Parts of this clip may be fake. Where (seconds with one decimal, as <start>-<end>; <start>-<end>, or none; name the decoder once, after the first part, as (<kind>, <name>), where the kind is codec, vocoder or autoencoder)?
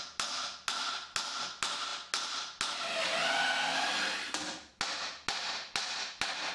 none